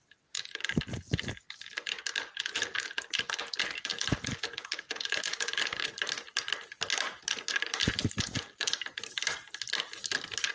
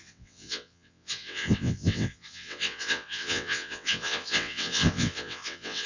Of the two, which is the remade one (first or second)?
second